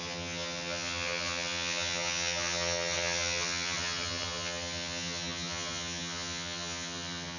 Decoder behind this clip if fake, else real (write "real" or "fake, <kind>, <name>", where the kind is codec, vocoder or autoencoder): fake, vocoder, HiFi-GAN